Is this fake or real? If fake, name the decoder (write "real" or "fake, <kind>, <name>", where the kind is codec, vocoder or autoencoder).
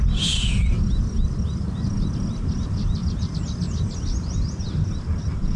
real